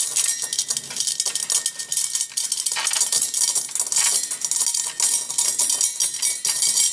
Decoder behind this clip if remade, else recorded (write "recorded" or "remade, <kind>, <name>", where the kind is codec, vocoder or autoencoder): recorded